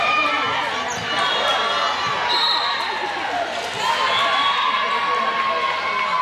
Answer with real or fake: real